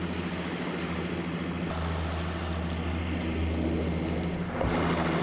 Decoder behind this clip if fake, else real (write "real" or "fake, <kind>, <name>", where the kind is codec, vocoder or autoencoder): real